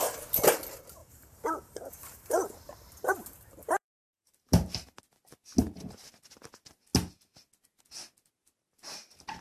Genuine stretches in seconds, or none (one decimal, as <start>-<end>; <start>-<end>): 0.0-1.0; 5.0-5.6; 6.1-9.4